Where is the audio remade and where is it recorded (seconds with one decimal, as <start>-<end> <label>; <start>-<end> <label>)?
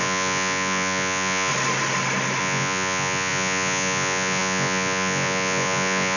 0.0-1.5 remade; 1.5-2.4 recorded; 2.4-6.2 remade